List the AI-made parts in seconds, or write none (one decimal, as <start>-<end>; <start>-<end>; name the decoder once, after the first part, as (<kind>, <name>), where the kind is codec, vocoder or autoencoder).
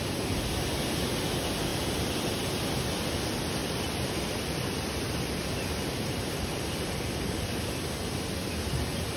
3.6-7.8 (vocoder, BigVGAN v2)